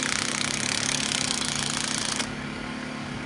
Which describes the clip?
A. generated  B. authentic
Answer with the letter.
A